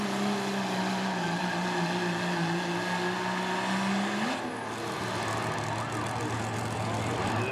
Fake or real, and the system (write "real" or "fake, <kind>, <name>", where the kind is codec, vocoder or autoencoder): real